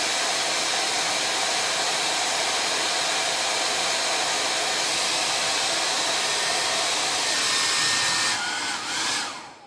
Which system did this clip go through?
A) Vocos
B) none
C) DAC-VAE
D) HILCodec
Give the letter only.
B